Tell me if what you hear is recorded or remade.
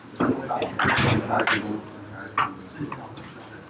recorded